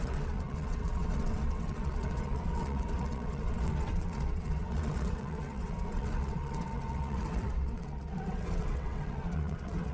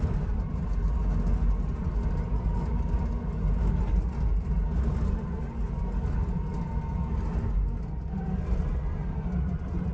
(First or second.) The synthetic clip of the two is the first